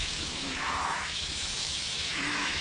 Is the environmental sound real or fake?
fake